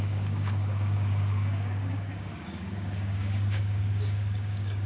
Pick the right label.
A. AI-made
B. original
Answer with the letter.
A